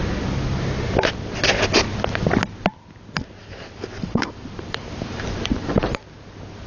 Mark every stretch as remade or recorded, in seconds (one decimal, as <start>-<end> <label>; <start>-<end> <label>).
0.0-3.4 recorded; 3.4-6.0 remade; 6.0-6.7 recorded